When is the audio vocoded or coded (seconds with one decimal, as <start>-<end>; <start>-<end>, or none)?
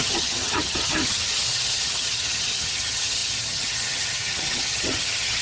0.0-5.4